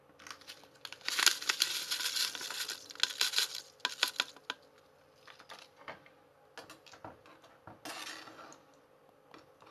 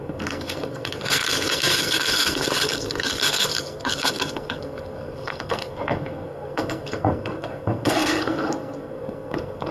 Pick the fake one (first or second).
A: second